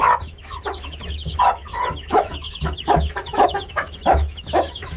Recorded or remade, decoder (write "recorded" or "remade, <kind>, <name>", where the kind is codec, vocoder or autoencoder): remade, autoencoder, DAC-VAE